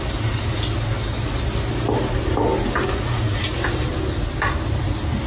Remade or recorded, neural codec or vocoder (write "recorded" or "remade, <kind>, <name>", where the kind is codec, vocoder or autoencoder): recorded